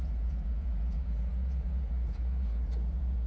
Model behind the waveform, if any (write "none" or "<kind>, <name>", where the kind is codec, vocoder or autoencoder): vocoder, Vocos